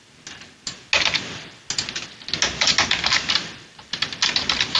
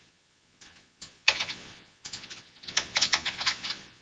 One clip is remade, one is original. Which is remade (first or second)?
second